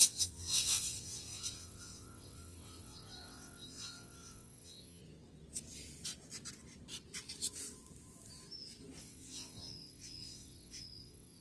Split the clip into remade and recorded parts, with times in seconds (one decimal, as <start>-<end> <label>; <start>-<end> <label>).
0.0-5.0 remade; 5.0-9.0 recorded; 9.0-11.4 remade